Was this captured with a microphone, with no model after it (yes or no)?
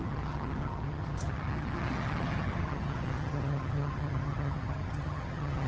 no